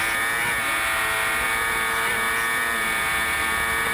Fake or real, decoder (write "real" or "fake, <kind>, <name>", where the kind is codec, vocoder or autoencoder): real